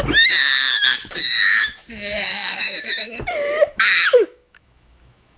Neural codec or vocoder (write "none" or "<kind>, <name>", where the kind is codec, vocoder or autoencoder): autoencoder, DAC-VAE